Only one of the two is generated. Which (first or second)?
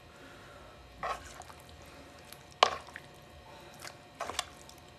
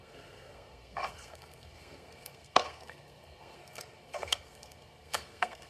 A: second